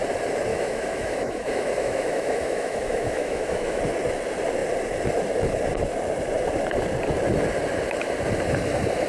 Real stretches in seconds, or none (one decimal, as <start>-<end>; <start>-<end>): 0.0-0.5; 3.8-9.1